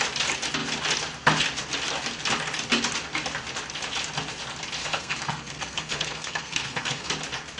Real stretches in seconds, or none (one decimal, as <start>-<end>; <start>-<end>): 0.0-4.8; 7.1-7.6